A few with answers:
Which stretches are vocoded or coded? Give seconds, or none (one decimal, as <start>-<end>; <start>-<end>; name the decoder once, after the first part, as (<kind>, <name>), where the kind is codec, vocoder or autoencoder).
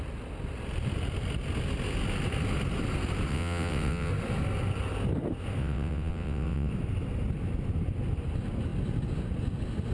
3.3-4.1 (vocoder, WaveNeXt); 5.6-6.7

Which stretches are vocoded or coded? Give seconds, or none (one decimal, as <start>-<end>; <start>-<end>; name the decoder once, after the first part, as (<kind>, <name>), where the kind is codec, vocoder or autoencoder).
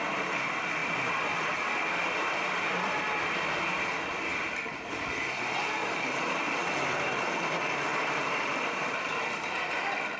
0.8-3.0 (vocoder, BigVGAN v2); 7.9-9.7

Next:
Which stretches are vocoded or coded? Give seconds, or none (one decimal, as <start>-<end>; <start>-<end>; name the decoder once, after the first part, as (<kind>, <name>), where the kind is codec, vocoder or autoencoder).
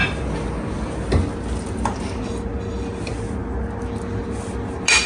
none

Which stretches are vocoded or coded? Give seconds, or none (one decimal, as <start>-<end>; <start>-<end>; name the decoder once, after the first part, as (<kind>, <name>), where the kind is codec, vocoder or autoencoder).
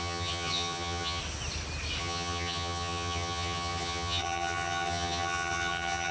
0.0-1.2 (vocoder, HiFi-GAN); 2.0-6.1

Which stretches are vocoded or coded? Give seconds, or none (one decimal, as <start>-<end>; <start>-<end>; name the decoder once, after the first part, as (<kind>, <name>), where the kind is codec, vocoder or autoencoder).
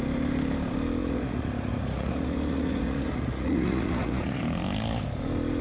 1.0-4.4 (vocoder, Vocos)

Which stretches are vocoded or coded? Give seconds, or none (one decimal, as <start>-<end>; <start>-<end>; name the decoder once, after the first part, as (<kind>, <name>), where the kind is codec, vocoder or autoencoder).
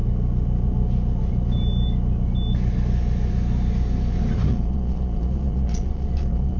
4.5-6.6 (vocoder, Vocos)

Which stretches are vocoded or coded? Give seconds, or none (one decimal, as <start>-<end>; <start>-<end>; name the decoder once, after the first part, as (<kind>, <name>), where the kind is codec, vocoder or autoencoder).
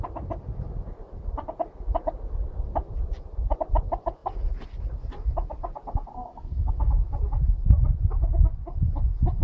6.1-6.7 (codec, SNAC)